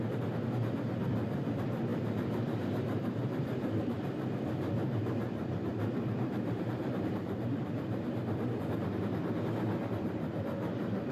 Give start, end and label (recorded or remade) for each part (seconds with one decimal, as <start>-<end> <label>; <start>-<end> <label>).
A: 0.0-1.9 recorded; 1.9-2.6 remade; 2.6-3.2 recorded; 3.2-3.9 remade; 3.9-4.8 recorded; 4.8-8.3 remade; 8.3-11.1 recorded